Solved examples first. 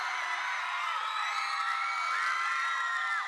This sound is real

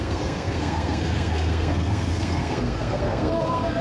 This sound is fake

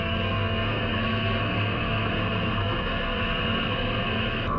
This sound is fake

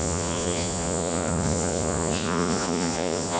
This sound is fake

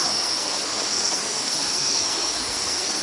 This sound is fake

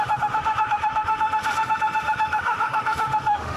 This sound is fake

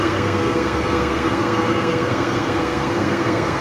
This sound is fake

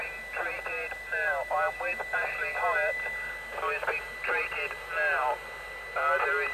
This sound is real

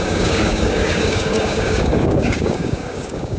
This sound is fake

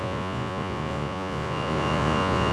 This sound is fake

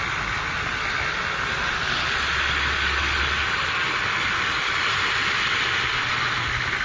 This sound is real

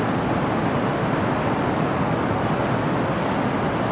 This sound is real